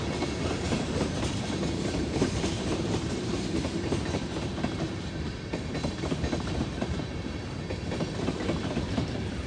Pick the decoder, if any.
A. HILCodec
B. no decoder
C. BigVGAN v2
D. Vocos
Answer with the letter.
C